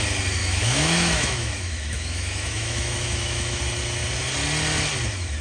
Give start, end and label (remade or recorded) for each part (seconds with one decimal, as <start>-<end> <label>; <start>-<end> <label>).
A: 0.0-0.4 recorded; 0.4-3.6 remade; 3.6-5.4 recorded

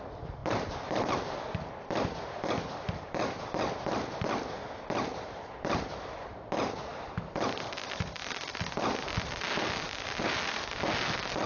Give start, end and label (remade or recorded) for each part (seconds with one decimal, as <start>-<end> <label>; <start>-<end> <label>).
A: 0.0-11.5 recorded

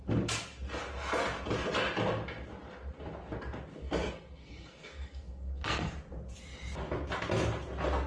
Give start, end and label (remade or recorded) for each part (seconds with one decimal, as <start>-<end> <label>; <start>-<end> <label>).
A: 0.0-3.8 recorded; 3.8-5.9 remade; 5.9-8.1 recorded

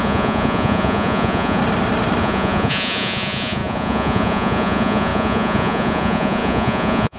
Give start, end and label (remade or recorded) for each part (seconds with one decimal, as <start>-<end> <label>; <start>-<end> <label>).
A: 0.0-1.6 remade; 1.6-2.2 recorded; 2.2-7.2 remade

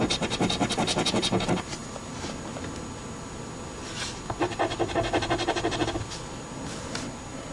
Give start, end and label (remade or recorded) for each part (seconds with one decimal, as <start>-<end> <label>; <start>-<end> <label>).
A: 0.0-7.5 recorded

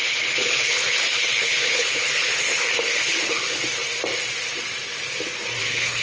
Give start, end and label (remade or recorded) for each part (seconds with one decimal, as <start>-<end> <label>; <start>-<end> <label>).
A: 0.0-3.8 remade; 3.8-5.6 recorded; 5.6-6.0 remade

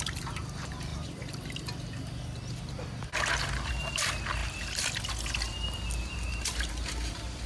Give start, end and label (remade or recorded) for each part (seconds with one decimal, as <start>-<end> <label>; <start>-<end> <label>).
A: 0.0-7.5 recorded

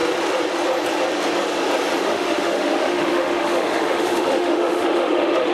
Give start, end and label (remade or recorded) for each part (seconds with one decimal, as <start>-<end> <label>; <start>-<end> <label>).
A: 0.0-2.1 recorded; 2.1-5.5 remade